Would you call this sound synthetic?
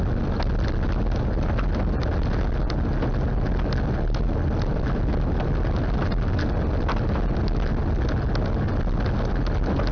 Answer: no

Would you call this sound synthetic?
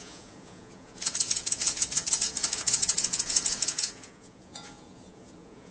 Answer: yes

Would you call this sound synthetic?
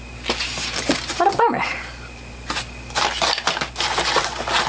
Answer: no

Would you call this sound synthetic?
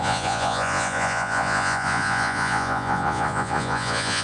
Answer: yes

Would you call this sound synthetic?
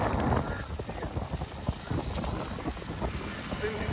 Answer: no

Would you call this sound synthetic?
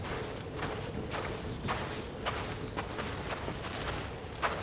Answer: no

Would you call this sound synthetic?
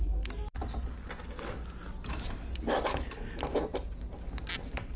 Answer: no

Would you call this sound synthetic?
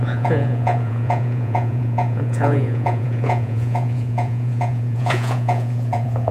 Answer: yes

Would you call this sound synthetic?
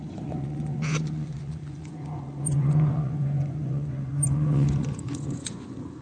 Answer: yes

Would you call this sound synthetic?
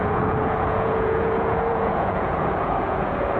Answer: yes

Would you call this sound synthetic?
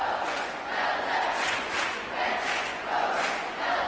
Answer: yes